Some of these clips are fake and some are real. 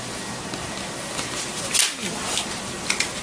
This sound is real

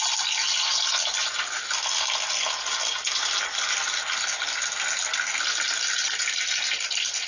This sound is real